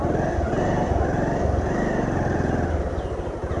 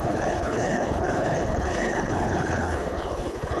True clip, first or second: first